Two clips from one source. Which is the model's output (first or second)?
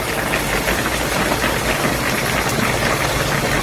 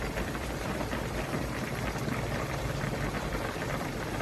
second